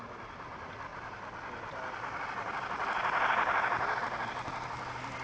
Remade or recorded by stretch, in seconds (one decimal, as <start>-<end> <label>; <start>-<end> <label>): 0.0-5.2 recorded